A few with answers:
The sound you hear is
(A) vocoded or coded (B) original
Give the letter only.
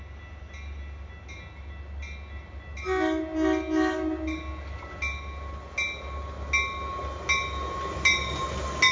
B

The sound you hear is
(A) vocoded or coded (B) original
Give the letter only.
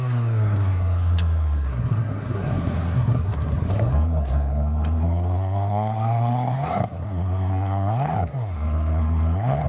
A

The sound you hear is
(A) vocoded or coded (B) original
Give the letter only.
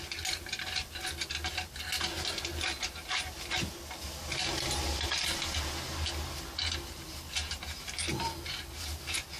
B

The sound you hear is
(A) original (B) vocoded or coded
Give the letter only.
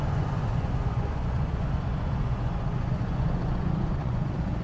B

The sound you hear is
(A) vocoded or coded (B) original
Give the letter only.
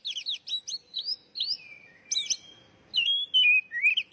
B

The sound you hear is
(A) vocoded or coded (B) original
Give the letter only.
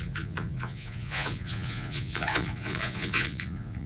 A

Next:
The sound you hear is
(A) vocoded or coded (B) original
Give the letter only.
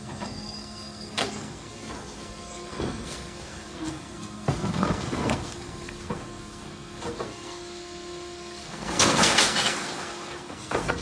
A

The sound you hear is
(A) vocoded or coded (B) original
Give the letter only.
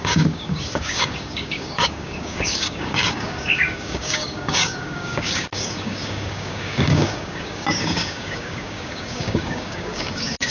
A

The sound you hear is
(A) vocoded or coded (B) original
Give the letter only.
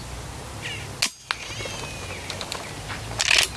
B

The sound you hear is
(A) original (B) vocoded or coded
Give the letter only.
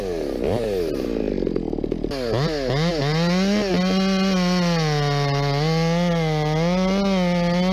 A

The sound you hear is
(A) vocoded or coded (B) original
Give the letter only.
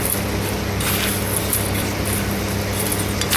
B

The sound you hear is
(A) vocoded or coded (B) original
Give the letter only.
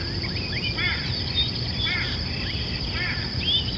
A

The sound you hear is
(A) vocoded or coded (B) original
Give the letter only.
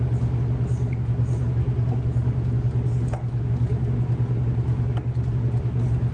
B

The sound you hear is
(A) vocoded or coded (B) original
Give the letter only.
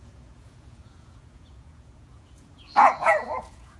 A